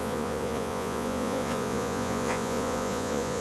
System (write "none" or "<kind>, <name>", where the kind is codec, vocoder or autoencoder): vocoder, Vocos